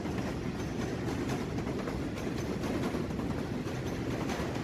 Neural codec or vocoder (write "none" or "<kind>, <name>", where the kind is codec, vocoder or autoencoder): none